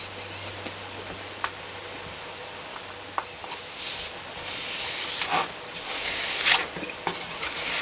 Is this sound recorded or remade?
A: recorded